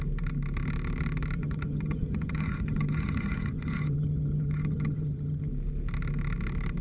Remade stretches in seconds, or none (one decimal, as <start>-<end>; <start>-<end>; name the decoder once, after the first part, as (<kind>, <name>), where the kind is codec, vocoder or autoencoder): 1.4-5.5 (vocoder, HiFi-GAN)

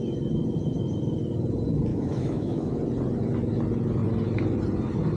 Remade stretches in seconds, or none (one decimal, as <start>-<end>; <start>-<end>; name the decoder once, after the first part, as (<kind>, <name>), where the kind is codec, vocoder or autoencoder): 1.9-2.8 (autoencoder, DAC-VAE)

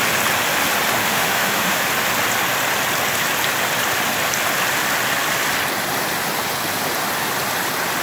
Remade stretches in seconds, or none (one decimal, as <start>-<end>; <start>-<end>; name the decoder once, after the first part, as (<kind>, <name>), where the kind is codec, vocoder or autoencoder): 1.0-1.8 (autoencoder, DAC-VAE)